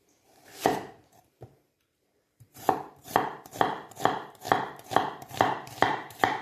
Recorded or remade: remade